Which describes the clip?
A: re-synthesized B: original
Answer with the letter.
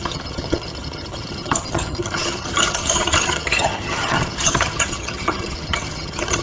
A